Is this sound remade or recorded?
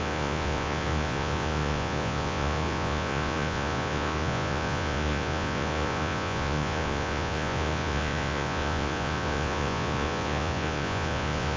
remade